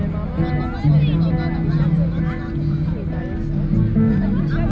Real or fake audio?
real